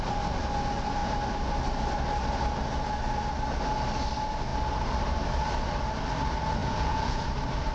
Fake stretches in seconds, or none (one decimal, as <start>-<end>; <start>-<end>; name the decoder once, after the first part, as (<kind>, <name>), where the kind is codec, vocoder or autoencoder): 6.6-7.2 (vocoder, Vocos)